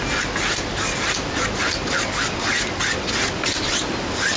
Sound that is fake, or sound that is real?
real